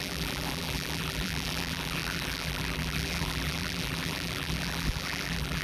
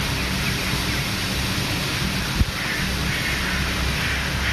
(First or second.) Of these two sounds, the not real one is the first